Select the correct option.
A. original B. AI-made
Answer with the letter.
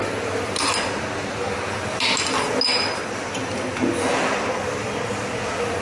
A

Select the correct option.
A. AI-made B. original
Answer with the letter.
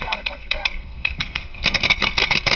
A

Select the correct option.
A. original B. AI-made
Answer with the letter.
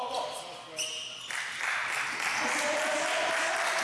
A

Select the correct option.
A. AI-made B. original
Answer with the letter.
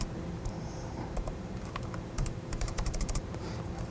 A